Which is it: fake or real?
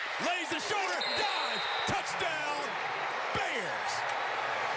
fake